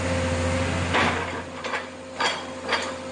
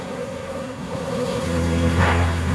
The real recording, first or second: first